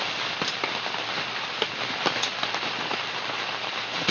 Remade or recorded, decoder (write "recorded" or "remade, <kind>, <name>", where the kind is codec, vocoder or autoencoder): recorded